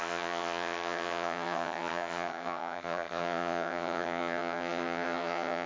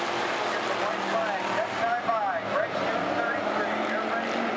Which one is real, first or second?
second